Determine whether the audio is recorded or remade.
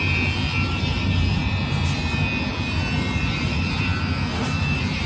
remade